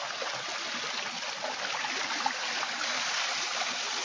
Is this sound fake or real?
real